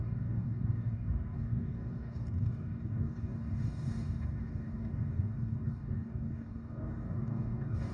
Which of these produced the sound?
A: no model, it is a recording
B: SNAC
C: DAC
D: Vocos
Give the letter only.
C